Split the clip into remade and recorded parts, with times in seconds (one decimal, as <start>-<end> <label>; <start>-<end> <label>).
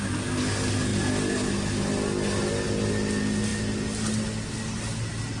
0.0-5.4 recorded